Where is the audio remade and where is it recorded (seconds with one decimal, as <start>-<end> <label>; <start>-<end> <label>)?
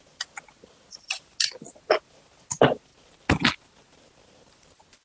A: 0.0-5.0 recorded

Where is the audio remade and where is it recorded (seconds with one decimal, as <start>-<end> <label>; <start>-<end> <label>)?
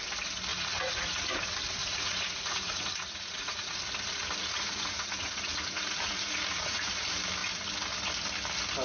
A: 0.0-0.5 recorded; 0.5-1.4 remade; 1.4-1.8 recorded; 1.8-3.8 remade; 3.8-4.4 recorded; 4.4-6.9 remade; 6.9-8.8 recorded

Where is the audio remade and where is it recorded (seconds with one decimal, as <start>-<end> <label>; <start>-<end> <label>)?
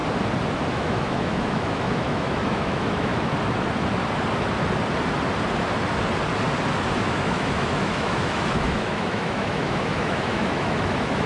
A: 0.0-0.7 recorded; 0.7-3.1 remade; 3.1-6.9 recorded; 6.9-11.3 remade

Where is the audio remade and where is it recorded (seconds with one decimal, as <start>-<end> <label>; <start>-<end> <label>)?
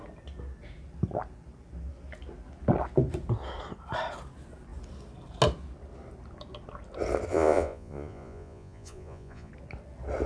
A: 0.0-7.3 recorded; 7.3-9.5 remade; 9.5-10.3 recorded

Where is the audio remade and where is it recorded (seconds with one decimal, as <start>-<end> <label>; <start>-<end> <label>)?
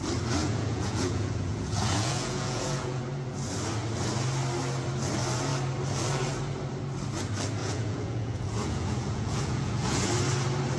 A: 0.0-0.4 recorded; 0.4-3.0 remade; 3.0-7.6 recorded; 7.6-10.1 remade; 10.1-10.8 recorded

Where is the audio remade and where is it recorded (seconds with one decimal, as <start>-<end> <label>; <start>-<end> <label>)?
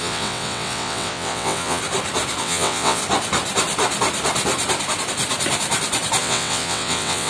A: 0.0-1.8 remade; 1.8-2.4 recorded; 2.4-3.0 remade; 3.0-6.2 recorded; 6.2-7.3 remade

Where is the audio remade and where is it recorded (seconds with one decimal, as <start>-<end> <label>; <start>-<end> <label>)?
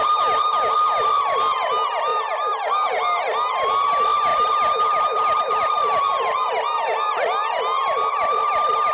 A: 0.0-2.1 recorded; 2.1-2.9 remade; 2.9-4.3 recorded; 4.3-6.5 remade; 6.5-8.9 recorded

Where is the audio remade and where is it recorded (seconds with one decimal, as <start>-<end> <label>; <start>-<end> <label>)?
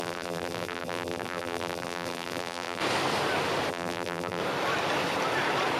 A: 0.0-2.8 remade; 2.8-3.7 recorded; 3.7-4.4 remade; 4.4-5.8 recorded